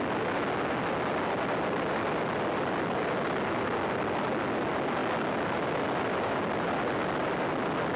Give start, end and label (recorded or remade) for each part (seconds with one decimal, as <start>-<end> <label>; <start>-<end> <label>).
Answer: 0.0-8.0 recorded